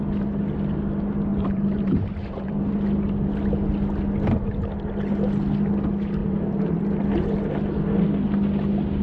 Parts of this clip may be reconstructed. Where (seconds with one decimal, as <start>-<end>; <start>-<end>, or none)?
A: 1.3-2.6; 6.2-6.8